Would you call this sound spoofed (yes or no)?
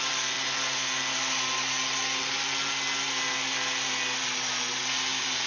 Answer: no